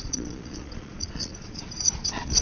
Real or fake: fake